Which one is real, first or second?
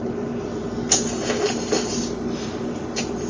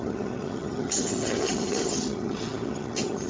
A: first